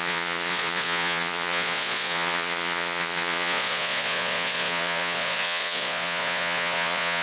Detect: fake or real fake